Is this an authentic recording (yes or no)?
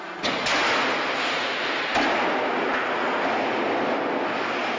yes